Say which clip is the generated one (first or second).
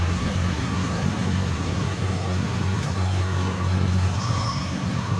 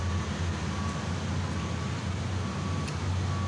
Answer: first